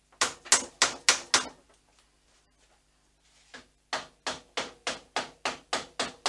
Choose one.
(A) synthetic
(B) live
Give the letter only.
B